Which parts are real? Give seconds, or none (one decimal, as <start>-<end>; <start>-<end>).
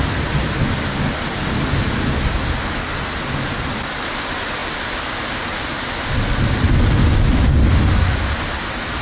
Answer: 0.0-9.0